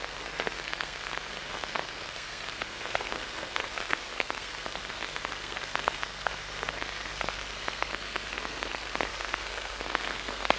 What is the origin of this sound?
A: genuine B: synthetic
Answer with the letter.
B